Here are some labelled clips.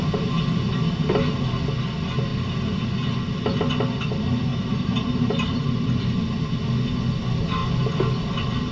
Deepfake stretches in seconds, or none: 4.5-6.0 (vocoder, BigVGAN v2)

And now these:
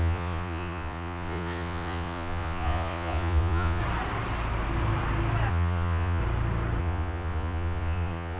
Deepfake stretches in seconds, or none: 0.0-3.8 (vocoder, Vocos); 5.5-6.2; 6.8-8.4

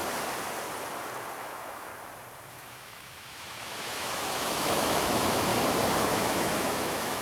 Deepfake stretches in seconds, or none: 1.4-1.9 (autoencoder, DAC-VAE); 2.5-5.5; 6.0-7.2